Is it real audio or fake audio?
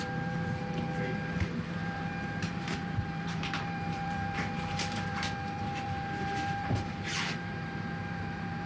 fake